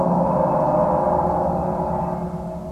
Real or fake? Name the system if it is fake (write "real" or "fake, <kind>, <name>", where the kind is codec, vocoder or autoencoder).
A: real